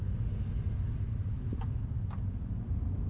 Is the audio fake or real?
real